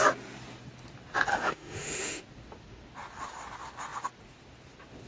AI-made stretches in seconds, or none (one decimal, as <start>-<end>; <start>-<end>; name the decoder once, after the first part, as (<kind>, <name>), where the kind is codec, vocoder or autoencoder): 1.3-2.2 (autoencoder, DAC-VAE)